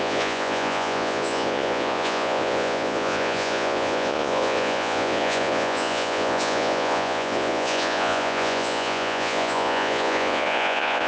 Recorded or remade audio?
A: remade